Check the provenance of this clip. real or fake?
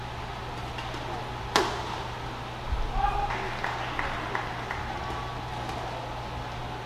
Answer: real